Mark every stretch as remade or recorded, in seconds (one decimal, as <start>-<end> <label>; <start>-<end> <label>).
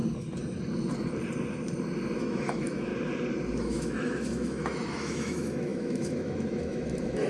0.0-2.2 recorded; 2.2-2.9 remade; 2.9-3.6 recorded; 3.6-7.3 remade